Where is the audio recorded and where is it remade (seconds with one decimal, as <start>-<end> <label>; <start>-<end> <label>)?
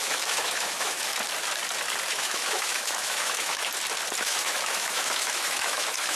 0.0-1.1 remade; 1.1-2.1 recorded; 2.1-3.7 remade; 3.7-4.2 recorded; 4.2-6.2 remade